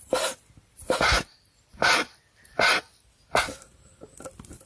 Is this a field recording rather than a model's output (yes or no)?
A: yes